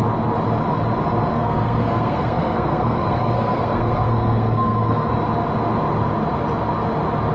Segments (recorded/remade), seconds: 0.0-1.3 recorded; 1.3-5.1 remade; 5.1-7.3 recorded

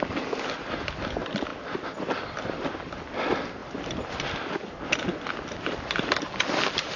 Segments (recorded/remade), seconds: 0.0-7.0 recorded